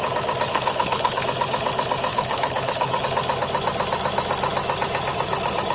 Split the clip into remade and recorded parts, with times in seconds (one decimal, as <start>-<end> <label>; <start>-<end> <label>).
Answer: 0.0-0.5 recorded; 0.5-1.2 remade; 1.2-2.1 recorded; 2.1-3.0 remade; 3.0-5.7 recorded